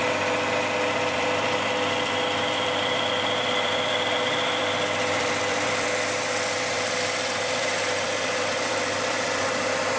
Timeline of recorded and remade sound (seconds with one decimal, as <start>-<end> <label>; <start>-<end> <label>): 0.0-0.9 recorded; 0.9-10.0 remade